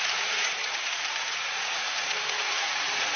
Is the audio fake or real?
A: fake